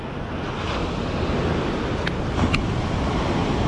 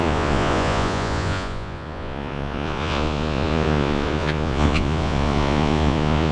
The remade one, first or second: second